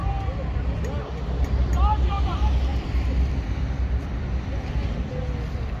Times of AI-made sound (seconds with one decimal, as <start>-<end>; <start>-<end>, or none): 2.7-5.1